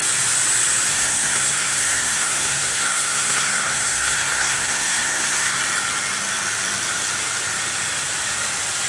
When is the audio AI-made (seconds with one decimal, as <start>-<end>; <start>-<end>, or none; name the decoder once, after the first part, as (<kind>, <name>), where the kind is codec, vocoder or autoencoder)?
0.9-5.6 (codec, SNAC)